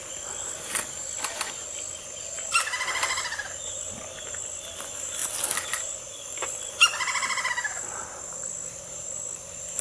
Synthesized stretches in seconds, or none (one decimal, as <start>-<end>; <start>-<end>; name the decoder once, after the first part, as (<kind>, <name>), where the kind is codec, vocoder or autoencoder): none